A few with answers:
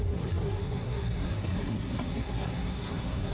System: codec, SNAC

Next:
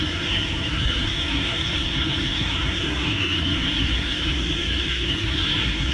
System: codec, SNAC